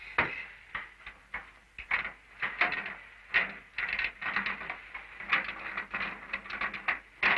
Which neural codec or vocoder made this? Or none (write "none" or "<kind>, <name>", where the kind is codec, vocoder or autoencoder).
none